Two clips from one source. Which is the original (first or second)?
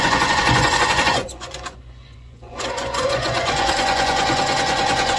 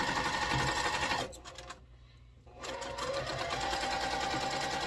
second